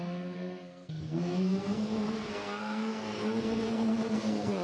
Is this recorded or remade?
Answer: remade